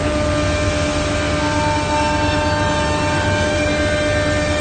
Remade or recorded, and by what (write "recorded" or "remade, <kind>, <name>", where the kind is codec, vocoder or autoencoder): recorded